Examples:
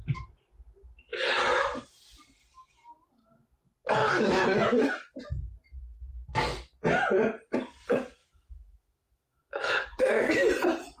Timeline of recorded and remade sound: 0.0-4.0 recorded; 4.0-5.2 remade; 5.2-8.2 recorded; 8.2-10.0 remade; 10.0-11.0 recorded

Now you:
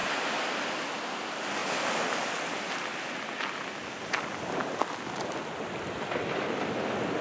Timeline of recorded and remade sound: 0.0-7.2 recorded

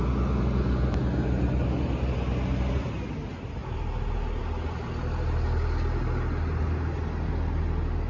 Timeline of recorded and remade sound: 0.0-8.1 recorded